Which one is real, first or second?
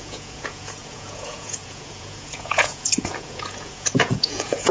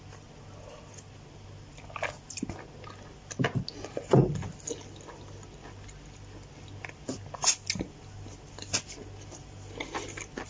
second